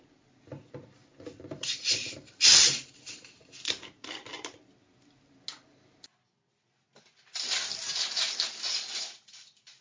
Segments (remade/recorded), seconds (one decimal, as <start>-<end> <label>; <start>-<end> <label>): 0.0-1.1 recorded; 1.1-4.3 remade; 4.3-9.8 recorded